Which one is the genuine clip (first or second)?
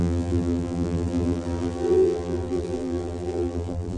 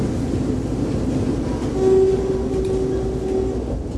second